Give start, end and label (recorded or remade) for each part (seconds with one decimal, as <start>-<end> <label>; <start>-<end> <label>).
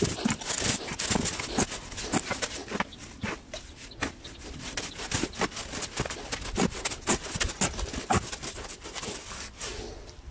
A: 0.0-10.3 recorded